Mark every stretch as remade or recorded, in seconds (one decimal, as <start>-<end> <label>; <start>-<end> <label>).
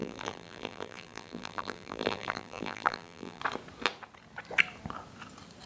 0.0-3.4 remade; 3.4-5.7 recorded